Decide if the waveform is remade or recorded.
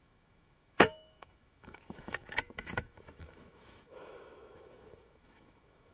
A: remade